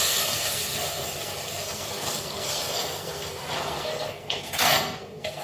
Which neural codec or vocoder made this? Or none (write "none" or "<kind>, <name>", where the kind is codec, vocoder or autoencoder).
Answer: codec, SNAC